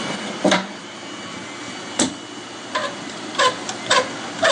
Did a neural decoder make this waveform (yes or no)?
yes